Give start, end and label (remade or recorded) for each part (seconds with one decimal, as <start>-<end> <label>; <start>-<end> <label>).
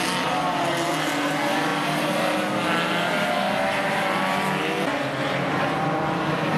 0.0-6.6 recorded